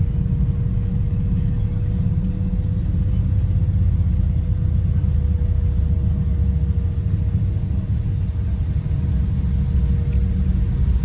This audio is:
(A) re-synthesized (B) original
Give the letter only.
B